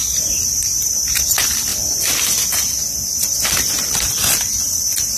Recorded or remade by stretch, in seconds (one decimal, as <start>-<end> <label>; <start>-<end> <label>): 0.0-5.2 recorded